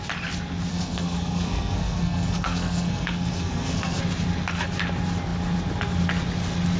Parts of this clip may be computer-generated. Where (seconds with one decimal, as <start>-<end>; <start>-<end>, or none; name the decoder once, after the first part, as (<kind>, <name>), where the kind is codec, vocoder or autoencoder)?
0.7-4.0 (codec, SNAC)